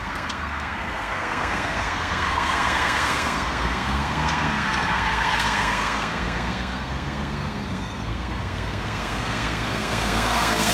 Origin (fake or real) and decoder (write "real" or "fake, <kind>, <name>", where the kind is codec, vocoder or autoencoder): fake, codec, SNAC